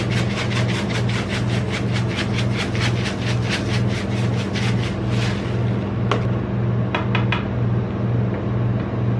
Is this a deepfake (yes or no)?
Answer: no